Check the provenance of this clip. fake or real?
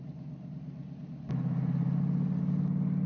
real